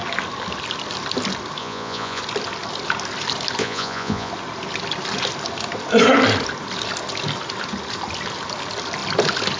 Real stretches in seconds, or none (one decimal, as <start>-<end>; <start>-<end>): 0.0-1.6; 2.2-3.6; 4.3-9.6